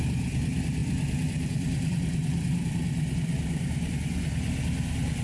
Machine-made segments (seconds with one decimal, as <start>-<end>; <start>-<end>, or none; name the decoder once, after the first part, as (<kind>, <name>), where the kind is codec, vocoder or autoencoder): 0.8-3.9 (vocoder, BigVGAN v2)